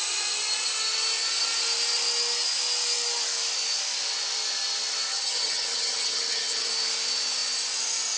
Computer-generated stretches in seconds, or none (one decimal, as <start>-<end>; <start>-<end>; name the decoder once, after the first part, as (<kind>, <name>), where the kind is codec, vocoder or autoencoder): 5.1-6.7 (vocoder, HiFi-GAN)